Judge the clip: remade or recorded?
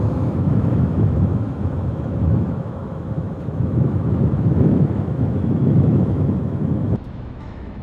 remade